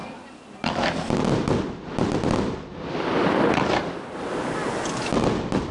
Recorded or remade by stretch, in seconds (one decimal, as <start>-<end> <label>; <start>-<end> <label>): 0.0-5.7 recorded